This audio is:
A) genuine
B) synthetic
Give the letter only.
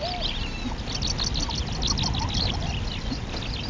A